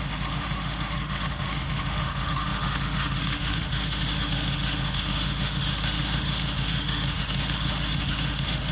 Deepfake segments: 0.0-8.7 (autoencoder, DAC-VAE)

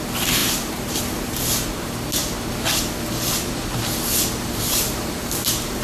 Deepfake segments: 0.0-2.2 (vocoder, BigVGAN v2); 4.4-5.8